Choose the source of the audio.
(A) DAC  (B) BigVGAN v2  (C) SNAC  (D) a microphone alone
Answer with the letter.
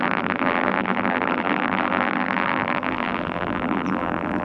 B